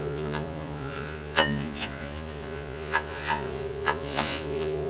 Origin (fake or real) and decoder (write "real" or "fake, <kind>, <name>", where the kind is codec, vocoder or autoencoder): fake, vocoder, Vocos